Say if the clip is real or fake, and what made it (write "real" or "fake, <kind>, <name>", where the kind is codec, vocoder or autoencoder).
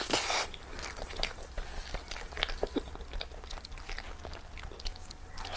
real